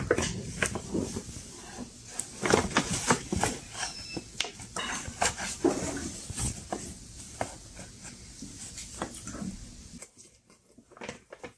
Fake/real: real